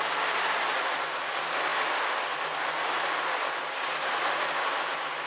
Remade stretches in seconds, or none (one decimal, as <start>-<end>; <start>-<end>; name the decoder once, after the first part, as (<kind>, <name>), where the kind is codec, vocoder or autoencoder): none